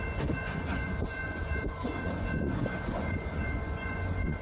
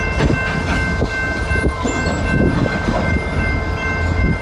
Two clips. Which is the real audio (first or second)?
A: second